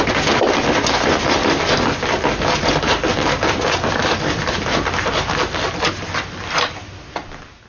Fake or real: real